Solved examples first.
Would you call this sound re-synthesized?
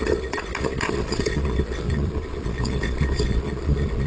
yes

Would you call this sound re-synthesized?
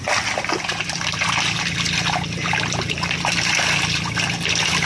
no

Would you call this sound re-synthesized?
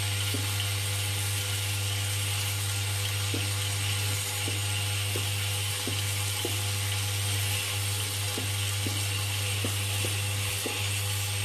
no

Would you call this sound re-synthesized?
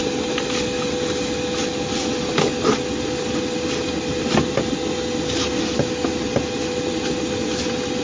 no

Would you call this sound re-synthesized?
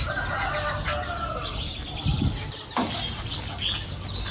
no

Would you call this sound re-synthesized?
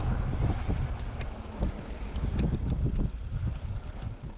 no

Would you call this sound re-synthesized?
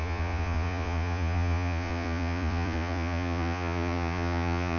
yes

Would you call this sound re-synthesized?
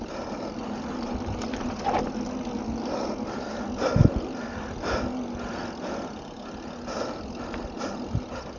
no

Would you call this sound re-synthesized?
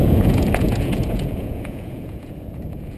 yes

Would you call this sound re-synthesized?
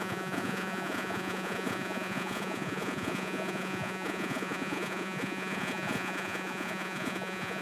yes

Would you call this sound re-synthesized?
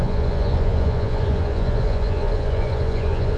yes